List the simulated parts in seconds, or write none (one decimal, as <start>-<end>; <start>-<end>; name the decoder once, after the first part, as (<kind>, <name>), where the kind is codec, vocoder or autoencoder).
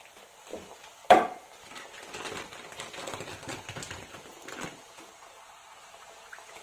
none